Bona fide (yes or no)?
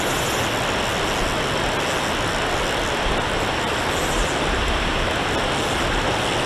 yes